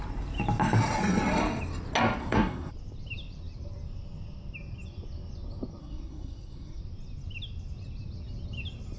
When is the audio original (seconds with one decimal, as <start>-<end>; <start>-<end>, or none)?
0.0-2.2; 2.7-5.8; 6.8-9.0